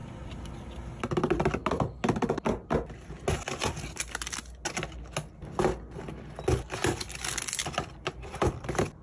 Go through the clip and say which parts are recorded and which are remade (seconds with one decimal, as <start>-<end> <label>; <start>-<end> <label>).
0.0-7.6 recorded; 7.6-8.5 remade; 8.5-9.0 recorded